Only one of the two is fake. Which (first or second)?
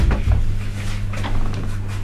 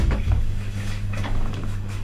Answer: second